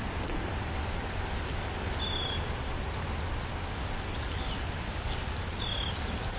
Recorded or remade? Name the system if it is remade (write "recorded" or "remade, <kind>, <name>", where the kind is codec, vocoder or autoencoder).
recorded